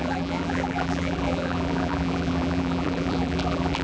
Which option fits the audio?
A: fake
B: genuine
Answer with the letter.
A